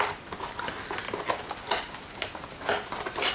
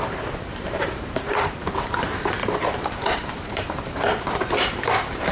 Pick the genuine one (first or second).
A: first